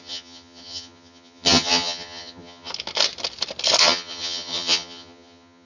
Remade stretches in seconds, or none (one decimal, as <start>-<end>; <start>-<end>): 0.0-2.7; 3.8-5.7